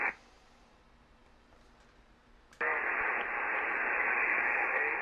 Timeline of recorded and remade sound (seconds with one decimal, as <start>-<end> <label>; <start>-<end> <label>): 0.0-5.0 recorded